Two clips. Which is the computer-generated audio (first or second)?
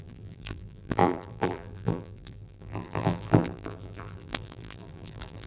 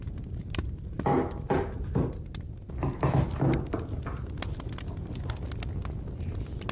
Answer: first